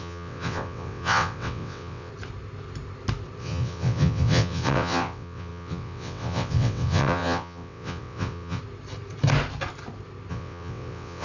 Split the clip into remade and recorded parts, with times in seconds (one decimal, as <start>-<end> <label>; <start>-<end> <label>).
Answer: 0.0-2.1 remade; 2.1-3.4 recorded; 3.4-8.6 remade; 8.6-10.3 recorded; 10.3-11.2 remade